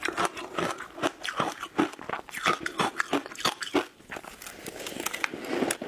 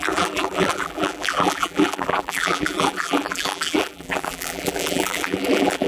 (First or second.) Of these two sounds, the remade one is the second